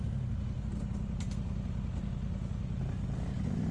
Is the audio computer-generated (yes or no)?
no